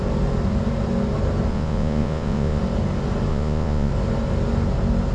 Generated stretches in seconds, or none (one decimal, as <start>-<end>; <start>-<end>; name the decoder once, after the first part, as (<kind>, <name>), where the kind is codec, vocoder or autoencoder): 1.5-2.6 (vocoder, Vocos); 3.3-3.9